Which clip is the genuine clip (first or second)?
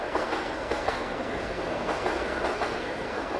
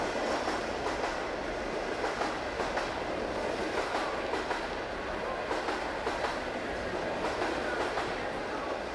second